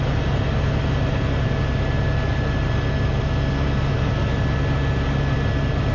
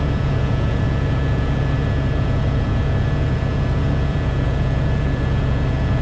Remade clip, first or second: second